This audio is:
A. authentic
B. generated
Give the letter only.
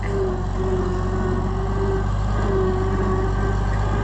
A